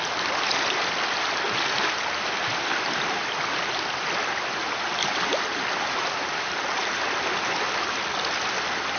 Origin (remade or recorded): recorded